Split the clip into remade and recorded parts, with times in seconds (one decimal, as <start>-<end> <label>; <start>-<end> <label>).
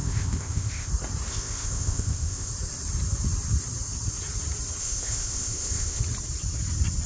0.0-0.9 remade; 0.9-1.3 recorded; 1.3-2.5 remade; 2.5-4.8 recorded; 4.8-6.0 remade; 6.0-7.1 recorded